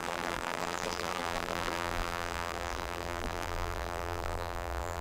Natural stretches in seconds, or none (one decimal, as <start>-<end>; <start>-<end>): none